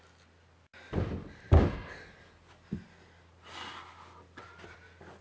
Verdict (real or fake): real